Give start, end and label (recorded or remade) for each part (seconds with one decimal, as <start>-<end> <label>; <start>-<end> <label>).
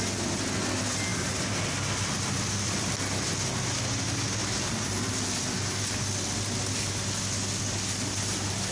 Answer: 0.0-1.1 recorded; 1.1-2.9 remade; 2.9-4.4 recorded; 4.4-5.1 remade; 5.1-8.7 recorded